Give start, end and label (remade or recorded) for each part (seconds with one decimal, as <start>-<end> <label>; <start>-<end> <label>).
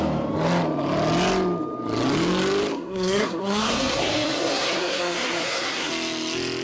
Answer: 0.0-2.7 recorded; 2.7-5.9 remade; 5.9-6.6 recorded